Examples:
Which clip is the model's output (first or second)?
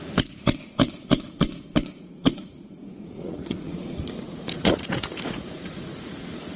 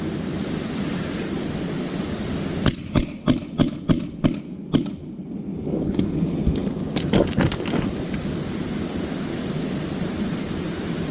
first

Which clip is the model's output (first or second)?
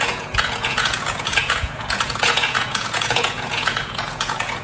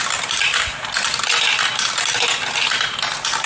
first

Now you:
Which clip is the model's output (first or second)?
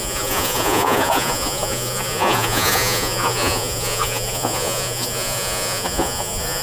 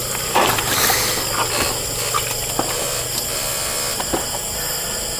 first